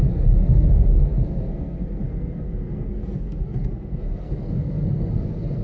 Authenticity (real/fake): fake